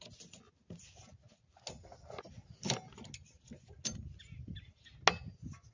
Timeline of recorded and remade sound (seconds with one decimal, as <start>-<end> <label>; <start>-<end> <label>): 0.0-5.7 recorded